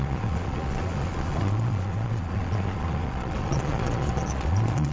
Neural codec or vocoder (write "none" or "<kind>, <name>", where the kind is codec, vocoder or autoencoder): vocoder, Vocos